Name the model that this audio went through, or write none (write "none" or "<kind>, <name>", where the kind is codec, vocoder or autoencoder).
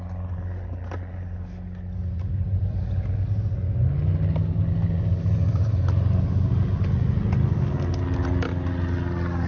none